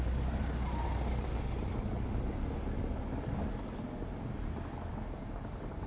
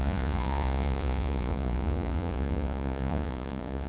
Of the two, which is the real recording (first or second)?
first